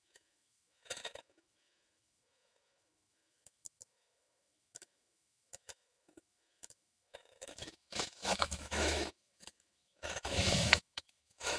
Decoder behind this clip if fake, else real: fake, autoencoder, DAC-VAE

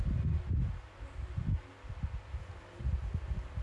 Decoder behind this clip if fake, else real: real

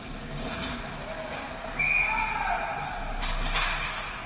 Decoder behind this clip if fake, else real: real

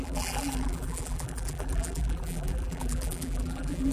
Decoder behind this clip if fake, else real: fake, vocoder, BigVGAN v2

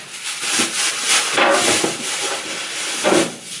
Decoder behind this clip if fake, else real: real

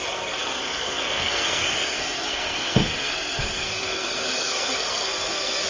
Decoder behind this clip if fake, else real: fake, codec, SNAC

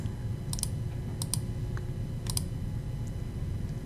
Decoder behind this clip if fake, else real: real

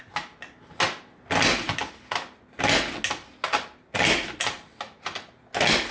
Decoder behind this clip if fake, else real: real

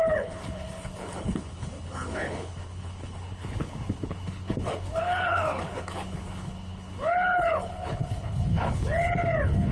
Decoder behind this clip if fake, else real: fake, codec, HILCodec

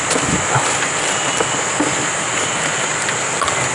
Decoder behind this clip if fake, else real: real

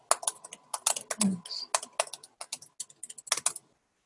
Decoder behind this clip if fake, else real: real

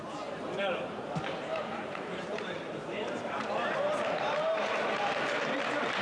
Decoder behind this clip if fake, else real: fake, vocoder, BigVGAN v2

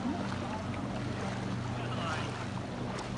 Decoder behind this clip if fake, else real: real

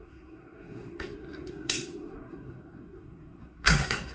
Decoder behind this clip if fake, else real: fake, codec, SNAC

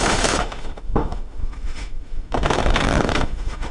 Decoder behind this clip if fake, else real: fake, autoencoder, DAC-VAE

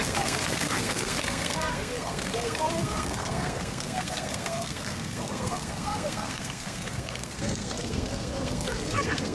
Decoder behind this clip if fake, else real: fake, codec, SNAC